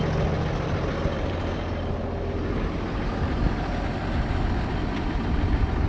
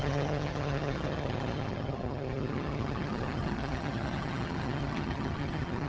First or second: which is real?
first